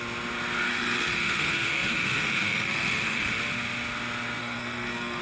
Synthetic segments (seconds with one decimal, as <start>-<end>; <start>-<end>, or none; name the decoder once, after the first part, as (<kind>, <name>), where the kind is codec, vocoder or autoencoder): 0.7-3.3 (codec, SNAC); 4.4-5.2